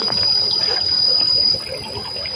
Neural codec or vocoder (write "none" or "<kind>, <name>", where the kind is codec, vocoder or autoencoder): none